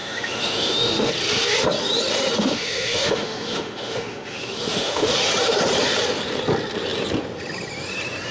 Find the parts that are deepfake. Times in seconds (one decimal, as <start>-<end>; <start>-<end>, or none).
0.0-1.1; 2.4-5.1